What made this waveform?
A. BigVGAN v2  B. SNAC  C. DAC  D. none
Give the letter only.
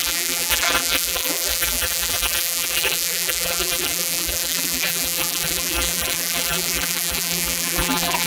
A